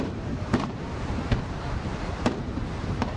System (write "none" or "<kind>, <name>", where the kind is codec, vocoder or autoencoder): vocoder, BigVGAN v2